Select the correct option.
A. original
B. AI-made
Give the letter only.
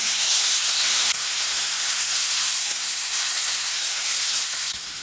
B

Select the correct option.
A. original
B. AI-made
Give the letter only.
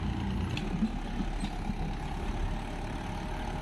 A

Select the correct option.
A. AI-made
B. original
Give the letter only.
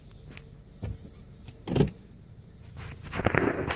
B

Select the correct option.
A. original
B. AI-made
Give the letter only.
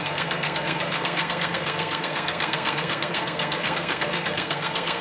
B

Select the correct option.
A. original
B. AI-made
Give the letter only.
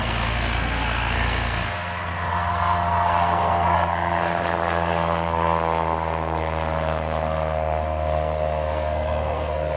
B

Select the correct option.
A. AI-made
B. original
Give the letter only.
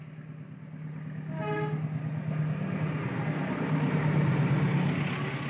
B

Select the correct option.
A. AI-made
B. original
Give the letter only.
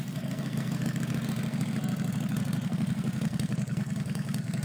A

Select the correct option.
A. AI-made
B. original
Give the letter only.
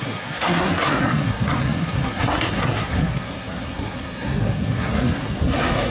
A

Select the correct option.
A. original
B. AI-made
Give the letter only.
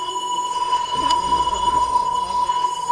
B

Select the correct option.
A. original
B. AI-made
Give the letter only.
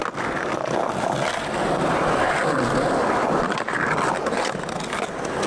A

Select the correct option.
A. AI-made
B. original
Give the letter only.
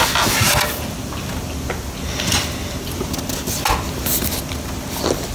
B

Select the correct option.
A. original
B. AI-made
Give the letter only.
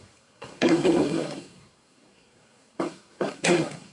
B